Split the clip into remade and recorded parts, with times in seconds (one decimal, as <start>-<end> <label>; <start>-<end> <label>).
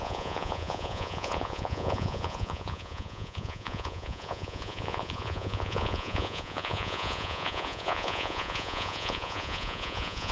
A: 0.0-10.3 remade